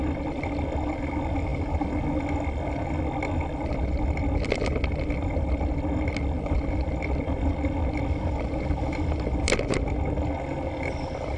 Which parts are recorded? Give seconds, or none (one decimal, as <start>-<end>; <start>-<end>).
0.0-11.4